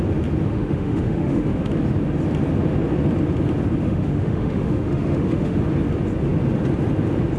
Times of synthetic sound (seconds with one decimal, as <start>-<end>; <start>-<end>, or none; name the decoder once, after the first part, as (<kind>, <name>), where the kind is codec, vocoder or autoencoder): 0.5-1.7 (autoencoder, DAC-VAE); 3.8-5.6